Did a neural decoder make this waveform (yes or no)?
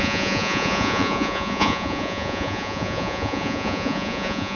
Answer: yes